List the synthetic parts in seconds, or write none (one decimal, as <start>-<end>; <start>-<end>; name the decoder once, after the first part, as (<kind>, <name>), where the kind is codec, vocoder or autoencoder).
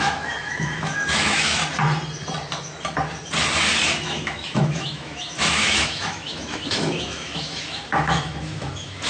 0.0-1.6 (autoencoder, DAC-VAE); 4.0-9.1